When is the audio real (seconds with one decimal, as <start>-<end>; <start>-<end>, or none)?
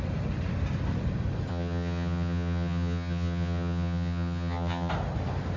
0.0-1.5; 4.9-5.6